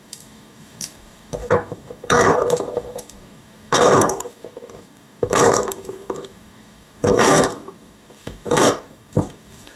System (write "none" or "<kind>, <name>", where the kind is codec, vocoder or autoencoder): codec, DAC